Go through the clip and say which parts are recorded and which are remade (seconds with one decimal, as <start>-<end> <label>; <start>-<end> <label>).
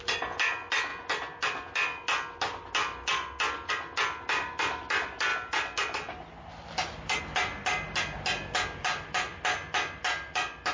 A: 0.0-10.7 recorded